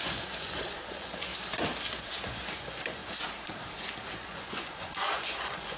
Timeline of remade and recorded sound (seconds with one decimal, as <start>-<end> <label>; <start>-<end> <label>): 0.0-1.3 remade; 1.3-2.0 recorded; 2.0-3.0 remade; 3.0-4.1 recorded; 4.1-5.8 remade